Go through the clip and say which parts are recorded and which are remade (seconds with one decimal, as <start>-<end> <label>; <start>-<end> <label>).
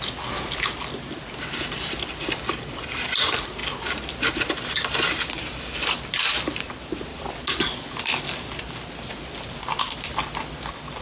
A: 0.0-11.0 recorded